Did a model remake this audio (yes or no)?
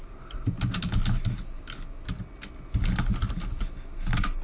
no